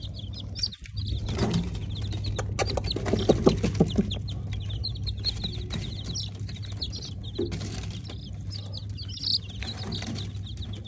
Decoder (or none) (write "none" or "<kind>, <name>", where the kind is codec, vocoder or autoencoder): none